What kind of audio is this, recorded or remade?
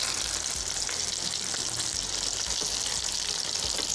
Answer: recorded